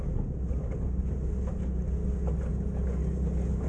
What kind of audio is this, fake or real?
real